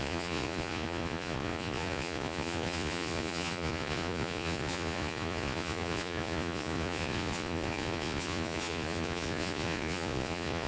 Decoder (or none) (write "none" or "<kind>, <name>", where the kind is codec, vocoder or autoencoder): vocoder, Vocos